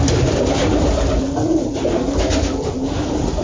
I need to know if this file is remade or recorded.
recorded